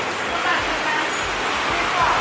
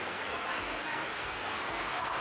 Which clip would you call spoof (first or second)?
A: second